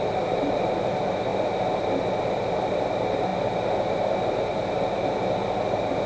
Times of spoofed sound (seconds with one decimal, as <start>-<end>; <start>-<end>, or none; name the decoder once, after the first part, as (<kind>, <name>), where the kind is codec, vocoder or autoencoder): none